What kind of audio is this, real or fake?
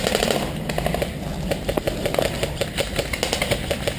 real